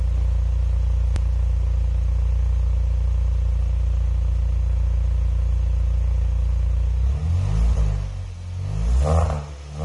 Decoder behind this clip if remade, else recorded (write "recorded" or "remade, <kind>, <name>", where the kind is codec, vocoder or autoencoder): recorded